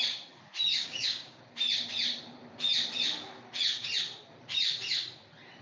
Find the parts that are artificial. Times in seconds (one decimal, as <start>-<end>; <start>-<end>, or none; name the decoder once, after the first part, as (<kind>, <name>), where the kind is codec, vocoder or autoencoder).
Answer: 0.7-1.4 (codec, DAC)